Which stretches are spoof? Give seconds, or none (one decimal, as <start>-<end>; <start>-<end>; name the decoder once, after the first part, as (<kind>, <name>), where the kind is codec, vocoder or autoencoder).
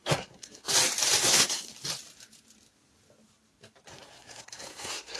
0.0-0.7 (codec, SNAC); 1.2-1.7; 3.9-5.2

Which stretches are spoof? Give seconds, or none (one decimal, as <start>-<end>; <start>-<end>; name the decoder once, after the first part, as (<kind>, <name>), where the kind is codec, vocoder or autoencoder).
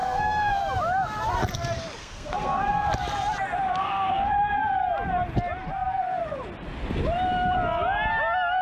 0.0-0.6 (codec, SNAC); 2.0-2.9; 3.8-4.3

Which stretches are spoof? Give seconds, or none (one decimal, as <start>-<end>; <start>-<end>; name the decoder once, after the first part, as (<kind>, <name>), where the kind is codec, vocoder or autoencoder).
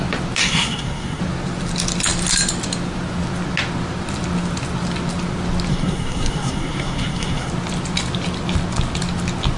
0.4-1.2 (codec, SNAC); 5.7-7.5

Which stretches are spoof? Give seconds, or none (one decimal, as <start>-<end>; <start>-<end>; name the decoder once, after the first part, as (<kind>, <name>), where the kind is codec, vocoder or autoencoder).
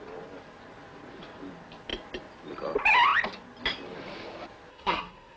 4.7-5.4 (codec, SNAC)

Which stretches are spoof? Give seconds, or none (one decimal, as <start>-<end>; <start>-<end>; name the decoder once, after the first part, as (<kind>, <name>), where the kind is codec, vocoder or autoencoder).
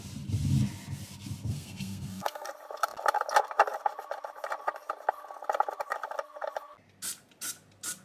1.5-2.5 (codec, SNAC)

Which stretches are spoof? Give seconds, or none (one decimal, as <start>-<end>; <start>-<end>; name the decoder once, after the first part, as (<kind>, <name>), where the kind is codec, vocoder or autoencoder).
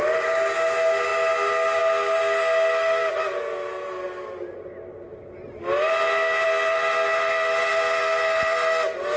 none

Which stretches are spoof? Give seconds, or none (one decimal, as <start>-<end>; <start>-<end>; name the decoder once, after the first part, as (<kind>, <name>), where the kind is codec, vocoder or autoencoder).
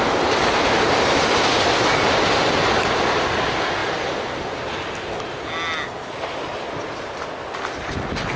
none